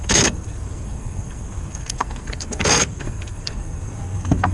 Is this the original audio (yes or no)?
no